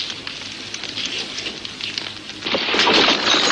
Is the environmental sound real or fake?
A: real